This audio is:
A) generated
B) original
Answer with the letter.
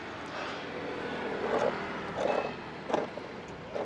B